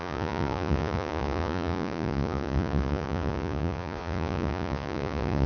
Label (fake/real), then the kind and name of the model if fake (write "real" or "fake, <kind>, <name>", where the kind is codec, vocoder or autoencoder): fake, vocoder, Vocos